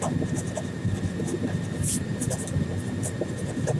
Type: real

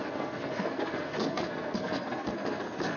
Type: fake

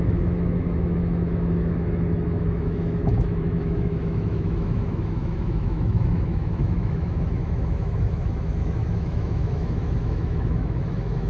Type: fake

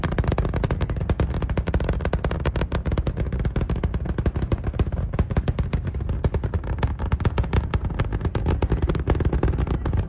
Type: real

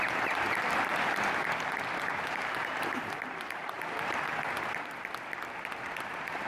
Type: fake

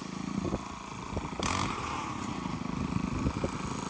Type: real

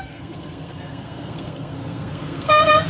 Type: fake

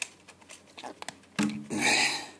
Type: real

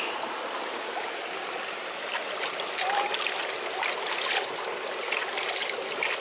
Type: real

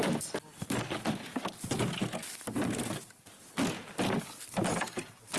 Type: real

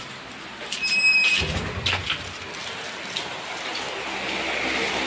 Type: real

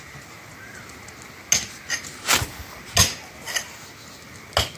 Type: real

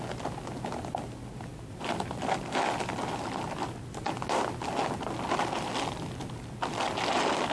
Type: real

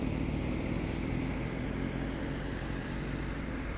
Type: fake